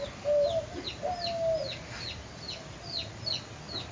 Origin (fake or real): real